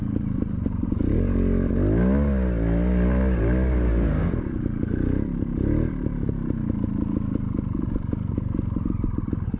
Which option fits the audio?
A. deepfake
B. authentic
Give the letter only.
B